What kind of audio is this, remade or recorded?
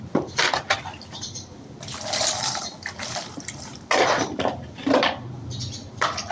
remade